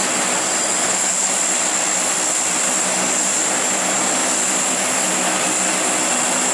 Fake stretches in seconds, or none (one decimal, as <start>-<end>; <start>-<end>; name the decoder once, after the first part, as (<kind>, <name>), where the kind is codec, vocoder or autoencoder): 0.8-1.3 (codec, HILCodec)